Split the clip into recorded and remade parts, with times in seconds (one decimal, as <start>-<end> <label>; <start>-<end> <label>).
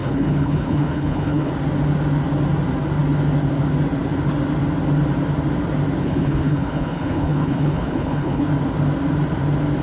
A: 0.0-1.5 remade; 1.5-6.0 recorded; 6.0-8.5 remade; 8.5-9.8 recorded